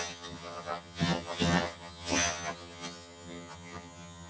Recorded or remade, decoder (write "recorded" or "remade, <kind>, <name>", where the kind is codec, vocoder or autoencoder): remade, vocoder, HiFi-GAN